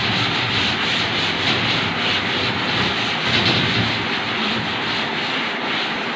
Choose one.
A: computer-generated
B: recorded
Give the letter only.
B